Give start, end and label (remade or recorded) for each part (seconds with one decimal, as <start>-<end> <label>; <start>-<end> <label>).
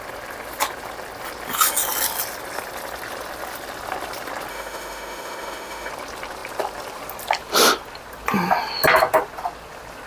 0.0-4.5 recorded; 4.5-5.9 remade; 5.9-10.1 recorded